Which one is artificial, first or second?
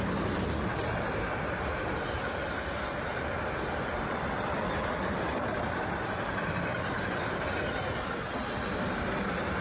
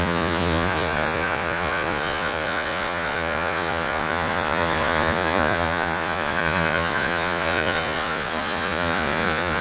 second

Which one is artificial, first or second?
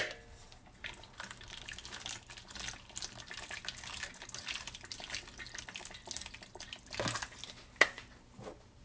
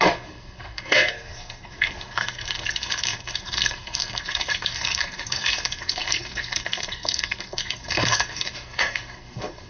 second